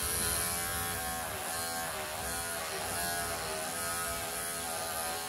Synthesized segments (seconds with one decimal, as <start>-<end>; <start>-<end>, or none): none